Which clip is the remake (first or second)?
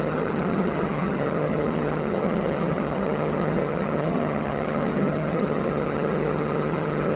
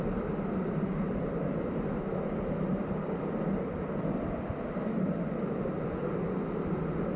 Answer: first